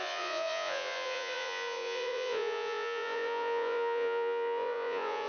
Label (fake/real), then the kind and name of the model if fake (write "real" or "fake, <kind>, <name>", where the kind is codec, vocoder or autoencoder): fake, vocoder, Vocos